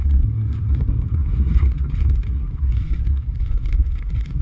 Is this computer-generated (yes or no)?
yes